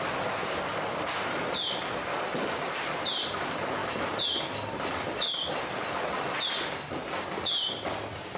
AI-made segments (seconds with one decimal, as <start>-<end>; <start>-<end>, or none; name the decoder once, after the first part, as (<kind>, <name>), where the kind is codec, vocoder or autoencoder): none